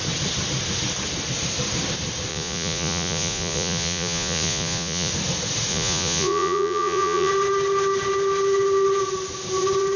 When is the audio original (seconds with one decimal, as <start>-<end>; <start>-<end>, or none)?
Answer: 0.0-2.3; 5.1-5.7; 7.3-10.0